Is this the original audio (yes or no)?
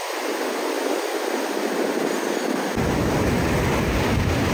yes